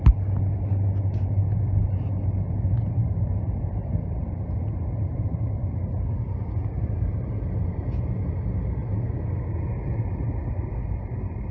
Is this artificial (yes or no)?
no